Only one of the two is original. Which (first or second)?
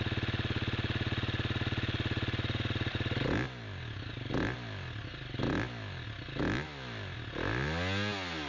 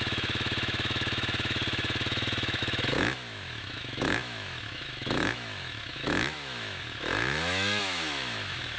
first